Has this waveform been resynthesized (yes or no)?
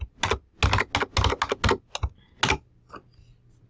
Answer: no